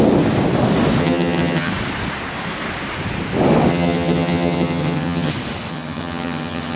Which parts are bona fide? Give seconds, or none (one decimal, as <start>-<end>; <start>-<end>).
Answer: 0.0-1.0; 1.7-3.7; 5.3-5.7